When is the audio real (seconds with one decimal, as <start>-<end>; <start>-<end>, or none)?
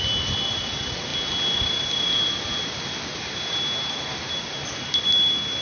0.0-5.6